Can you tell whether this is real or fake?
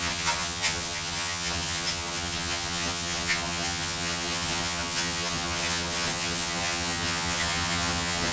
fake